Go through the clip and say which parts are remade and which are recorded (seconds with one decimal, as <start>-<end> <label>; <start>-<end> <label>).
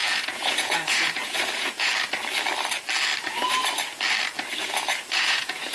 0.0-1.9 remade; 1.9-4.6 recorded; 4.6-5.7 remade